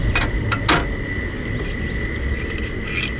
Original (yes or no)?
yes